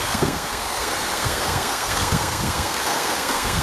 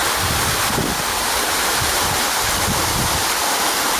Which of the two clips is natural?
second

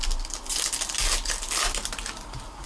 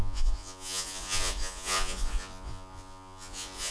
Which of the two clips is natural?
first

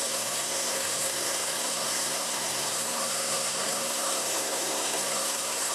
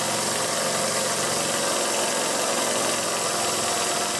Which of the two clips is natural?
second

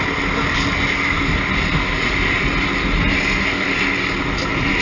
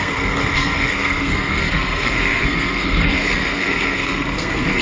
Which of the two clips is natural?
first